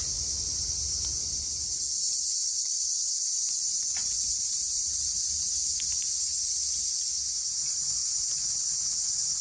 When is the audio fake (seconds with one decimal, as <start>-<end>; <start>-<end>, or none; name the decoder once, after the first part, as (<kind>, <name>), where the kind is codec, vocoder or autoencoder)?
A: 2.4-3.2 (vocoder, BigVGAN v2); 4.0-5.3

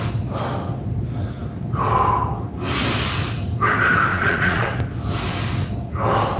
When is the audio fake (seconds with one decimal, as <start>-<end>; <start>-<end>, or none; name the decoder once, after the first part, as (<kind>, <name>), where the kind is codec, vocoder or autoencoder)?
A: 4.1-4.7 (vocoder, Vocos)

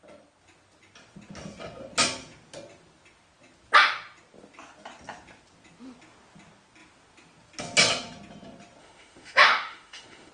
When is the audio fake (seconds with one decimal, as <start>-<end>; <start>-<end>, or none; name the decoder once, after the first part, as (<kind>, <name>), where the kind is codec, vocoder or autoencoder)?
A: 8.8-10.3 (autoencoder, DAC-VAE)